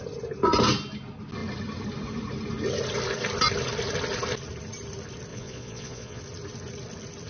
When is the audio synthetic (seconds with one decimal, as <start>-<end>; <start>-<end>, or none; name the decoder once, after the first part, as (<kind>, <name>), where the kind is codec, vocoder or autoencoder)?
5.3-6.2 (vocoder, Vocos)